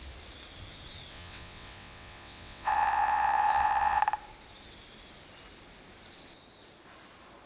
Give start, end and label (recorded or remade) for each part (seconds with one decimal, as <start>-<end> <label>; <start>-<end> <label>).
0.0-1.1 recorded; 1.1-4.0 remade; 4.0-7.5 recorded